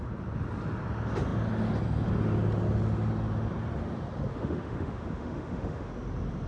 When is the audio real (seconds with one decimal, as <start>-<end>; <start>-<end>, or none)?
0.0-4.3; 5.9-6.5